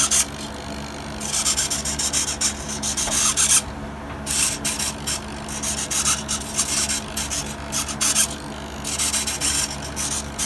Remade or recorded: recorded